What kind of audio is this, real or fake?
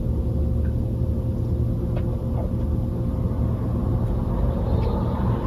real